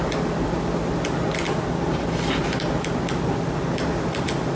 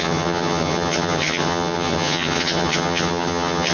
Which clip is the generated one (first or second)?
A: second